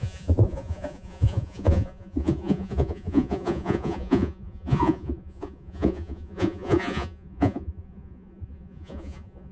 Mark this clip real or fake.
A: fake